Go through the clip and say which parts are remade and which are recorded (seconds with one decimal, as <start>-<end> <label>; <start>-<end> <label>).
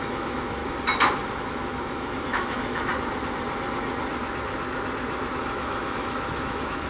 0.0-0.6 remade; 0.6-1.3 recorded; 1.3-2.9 remade; 2.9-5.4 recorded; 5.4-6.9 remade